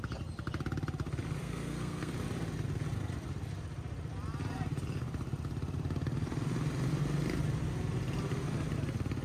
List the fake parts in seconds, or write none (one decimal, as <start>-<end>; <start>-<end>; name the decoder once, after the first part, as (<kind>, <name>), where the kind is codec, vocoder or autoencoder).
1.4-2.1 (codec, SNAC)